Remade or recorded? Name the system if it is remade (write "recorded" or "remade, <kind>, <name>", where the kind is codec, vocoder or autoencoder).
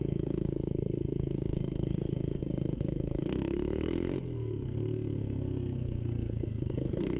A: remade, codec, SNAC